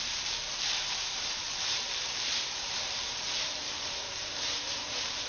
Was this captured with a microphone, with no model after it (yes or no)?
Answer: no